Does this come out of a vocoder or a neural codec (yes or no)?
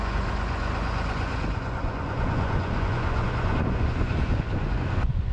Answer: yes